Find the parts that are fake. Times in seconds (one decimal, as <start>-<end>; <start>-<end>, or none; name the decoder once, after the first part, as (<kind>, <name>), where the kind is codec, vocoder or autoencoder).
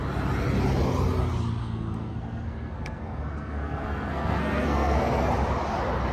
1.6-5.3 (codec, SNAC)